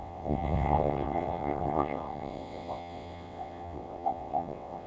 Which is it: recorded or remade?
remade